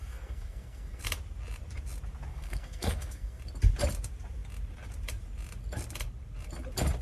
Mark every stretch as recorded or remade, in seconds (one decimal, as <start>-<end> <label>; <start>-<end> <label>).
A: 0.0-1.0 remade; 1.0-2.3 recorded; 2.3-3.4 remade; 3.4-7.0 recorded